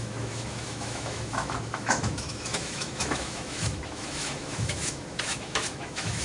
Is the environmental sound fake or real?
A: fake